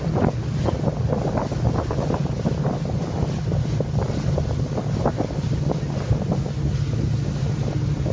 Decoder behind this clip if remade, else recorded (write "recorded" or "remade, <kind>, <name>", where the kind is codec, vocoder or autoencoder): recorded